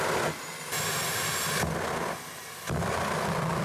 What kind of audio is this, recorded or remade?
recorded